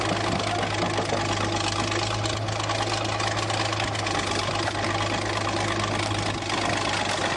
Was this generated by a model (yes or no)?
no